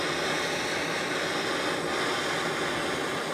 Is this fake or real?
real